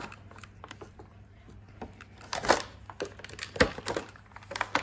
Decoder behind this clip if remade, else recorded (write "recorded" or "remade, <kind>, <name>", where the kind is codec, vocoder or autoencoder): recorded